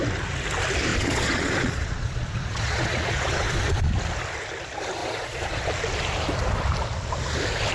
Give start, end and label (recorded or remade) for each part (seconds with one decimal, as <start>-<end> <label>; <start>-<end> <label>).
0.0-0.9 recorded; 0.9-3.9 remade; 3.9-5.0 recorded; 5.0-5.7 remade; 5.7-7.7 recorded